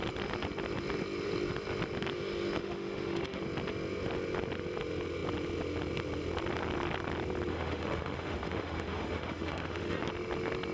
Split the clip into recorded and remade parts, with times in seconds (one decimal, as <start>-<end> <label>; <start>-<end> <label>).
0.0-2.6 recorded; 2.6-3.4 remade; 3.4-7.5 recorded; 7.5-10.0 remade; 10.0-10.7 recorded